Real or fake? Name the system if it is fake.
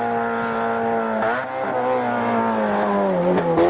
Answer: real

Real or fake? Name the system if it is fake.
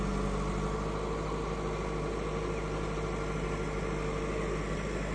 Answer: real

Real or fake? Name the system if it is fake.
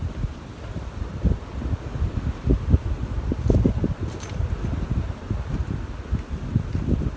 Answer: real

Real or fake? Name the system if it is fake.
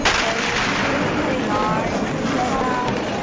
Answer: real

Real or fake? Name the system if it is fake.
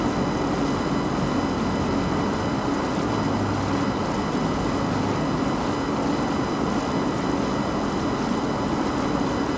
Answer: real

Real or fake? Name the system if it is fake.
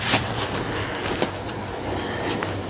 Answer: real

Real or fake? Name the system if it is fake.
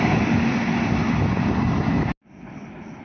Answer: real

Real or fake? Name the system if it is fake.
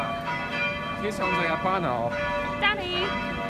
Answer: real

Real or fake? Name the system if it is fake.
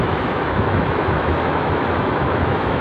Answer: fake, autoencoder, DAC-VAE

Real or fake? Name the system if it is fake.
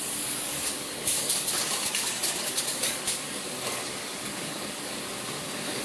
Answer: fake, codec, DAC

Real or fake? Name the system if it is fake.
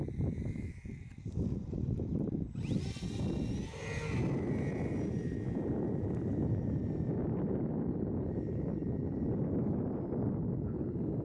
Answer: real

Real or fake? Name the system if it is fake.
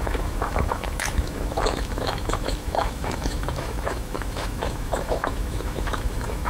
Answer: fake, autoencoder, DAC-VAE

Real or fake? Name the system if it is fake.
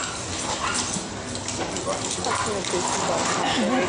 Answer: real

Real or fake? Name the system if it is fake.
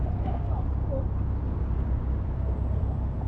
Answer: real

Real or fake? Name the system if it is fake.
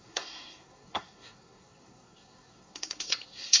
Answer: fake, codec, SNAC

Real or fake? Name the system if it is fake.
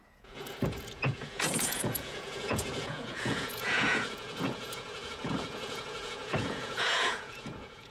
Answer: fake, vocoder, Vocos